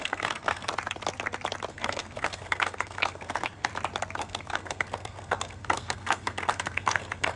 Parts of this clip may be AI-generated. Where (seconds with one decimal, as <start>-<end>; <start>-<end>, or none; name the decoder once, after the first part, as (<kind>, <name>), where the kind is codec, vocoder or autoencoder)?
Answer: 0.0-0.7 (codec, SNAC); 1.7-3.7; 4.2-7.4